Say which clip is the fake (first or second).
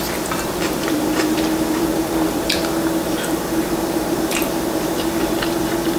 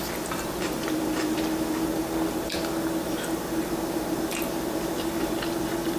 first